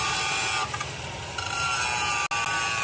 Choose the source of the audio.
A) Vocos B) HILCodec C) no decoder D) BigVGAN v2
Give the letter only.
C